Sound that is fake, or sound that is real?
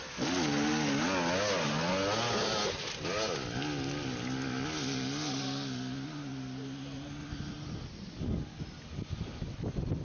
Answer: real